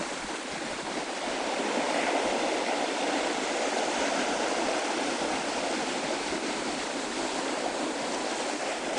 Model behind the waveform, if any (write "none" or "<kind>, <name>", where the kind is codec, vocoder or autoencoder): none